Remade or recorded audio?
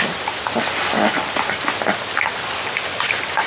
recorded